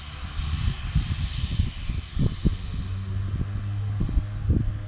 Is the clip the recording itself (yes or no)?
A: yes